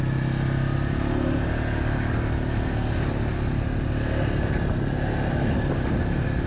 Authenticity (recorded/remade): recorded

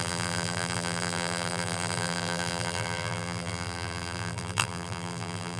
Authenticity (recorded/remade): remade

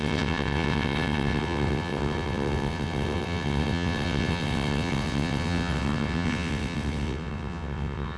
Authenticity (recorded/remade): remade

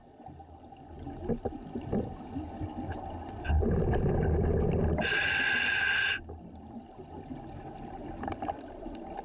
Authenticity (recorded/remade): recorded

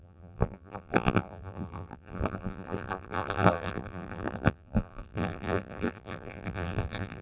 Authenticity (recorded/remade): remade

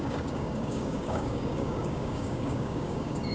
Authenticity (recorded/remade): remade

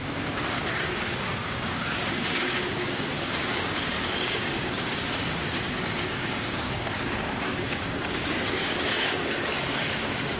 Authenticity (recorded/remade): remade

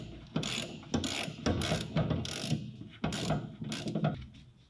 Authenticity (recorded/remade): recorded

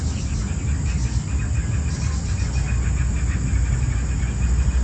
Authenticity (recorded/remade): recorded